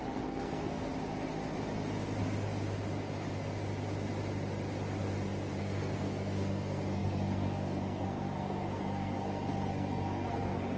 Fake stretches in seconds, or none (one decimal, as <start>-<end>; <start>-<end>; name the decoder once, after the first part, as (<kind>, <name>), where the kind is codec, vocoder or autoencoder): 0.0-0.9 (codec, SNAC); 5.6-10.8